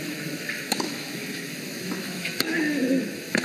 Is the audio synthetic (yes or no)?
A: yes